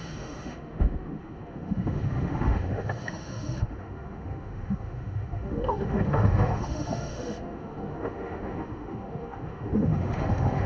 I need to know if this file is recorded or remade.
remade